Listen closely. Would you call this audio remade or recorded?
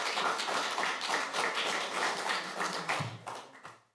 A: recorded